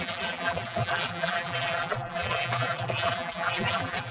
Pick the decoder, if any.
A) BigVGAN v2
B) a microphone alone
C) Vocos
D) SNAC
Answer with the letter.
A